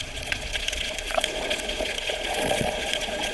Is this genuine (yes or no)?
no